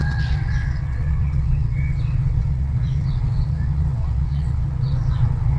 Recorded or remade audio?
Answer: remade